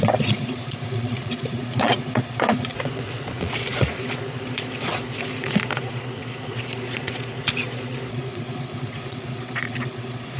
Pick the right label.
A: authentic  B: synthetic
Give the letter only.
B